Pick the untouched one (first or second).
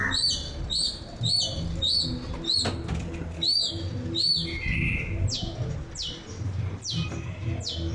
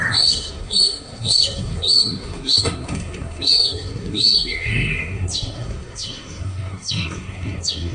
first